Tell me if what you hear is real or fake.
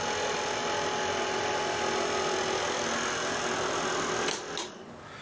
real